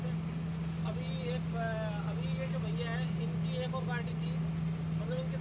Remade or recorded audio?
recorded